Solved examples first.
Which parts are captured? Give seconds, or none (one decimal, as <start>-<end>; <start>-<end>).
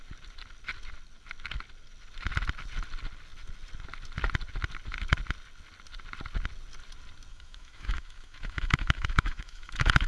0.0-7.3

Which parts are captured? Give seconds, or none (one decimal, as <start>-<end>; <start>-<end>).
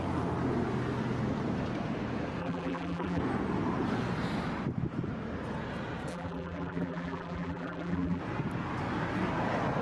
0.0-2.4; 3.2-6.1; 8.2-9.8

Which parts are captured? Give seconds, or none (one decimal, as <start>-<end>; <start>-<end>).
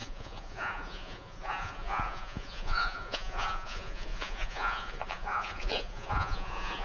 none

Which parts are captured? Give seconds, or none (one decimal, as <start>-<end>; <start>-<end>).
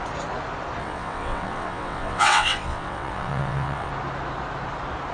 0.0-0.8; 3.9-5.1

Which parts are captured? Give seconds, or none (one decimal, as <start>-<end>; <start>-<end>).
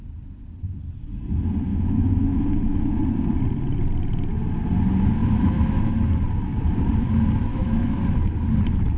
0.0-1.7; 3.0-5.2; 5.8-7.5; 8.0-9.0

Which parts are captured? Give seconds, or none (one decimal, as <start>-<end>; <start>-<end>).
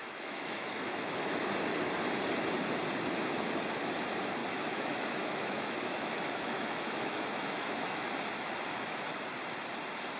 1.4-4.4; 8.1-10.2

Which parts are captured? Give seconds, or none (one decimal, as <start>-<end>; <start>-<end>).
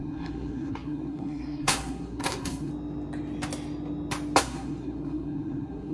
2.7-4.4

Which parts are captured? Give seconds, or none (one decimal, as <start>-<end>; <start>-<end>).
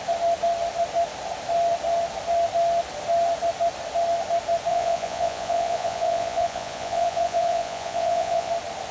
0.0-4.7; 8.5-8.9